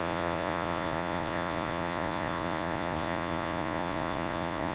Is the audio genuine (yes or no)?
no